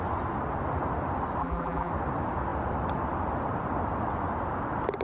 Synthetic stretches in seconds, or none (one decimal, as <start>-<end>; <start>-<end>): 1.4-1.9